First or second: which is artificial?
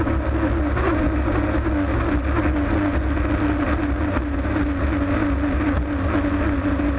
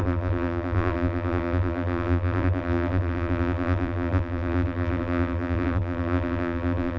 second